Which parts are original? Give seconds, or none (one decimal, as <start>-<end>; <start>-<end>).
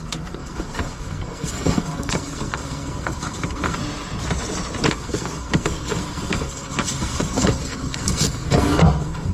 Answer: 3.8-4.9